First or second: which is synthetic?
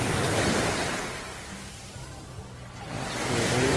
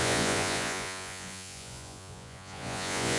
second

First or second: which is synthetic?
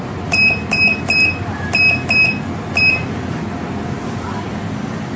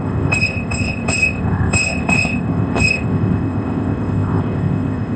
second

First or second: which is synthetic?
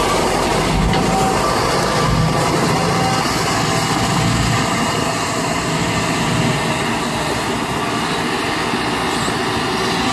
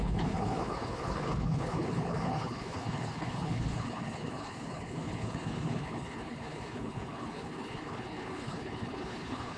second